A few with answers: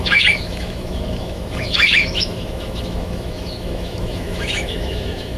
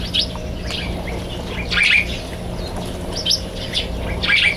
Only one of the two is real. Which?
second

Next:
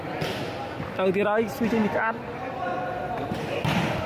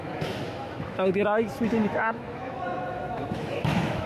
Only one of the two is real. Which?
first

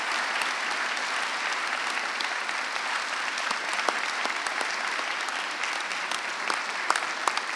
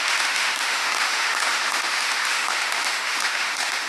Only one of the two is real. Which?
first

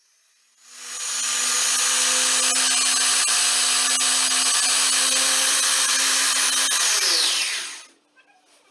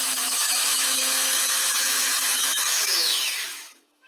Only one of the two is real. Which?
first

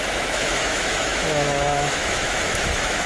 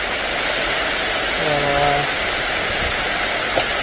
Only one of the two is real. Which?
second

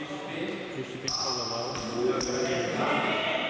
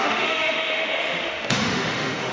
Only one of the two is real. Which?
first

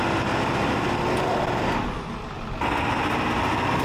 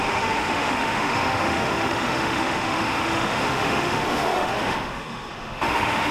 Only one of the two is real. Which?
first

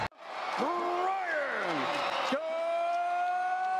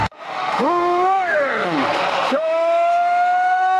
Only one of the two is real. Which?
first